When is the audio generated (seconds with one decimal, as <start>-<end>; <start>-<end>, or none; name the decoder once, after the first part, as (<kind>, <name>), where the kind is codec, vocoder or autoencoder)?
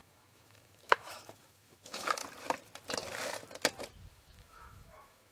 0.0-2.2 (autoencoder, DAC-VAE); 4.1-5.3